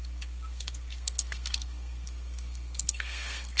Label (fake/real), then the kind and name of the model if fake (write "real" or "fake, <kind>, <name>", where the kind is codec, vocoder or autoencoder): fake, codec, SNAC